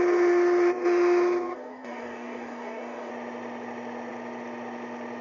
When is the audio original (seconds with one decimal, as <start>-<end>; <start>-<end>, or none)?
0.0-1.5; 3.1-5.2